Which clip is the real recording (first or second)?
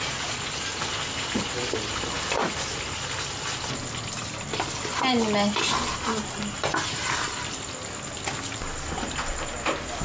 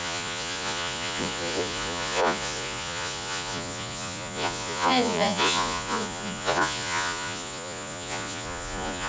first